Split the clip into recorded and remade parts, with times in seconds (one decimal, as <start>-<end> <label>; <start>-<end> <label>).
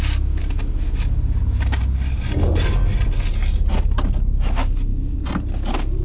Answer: 0.0-6.0 recorded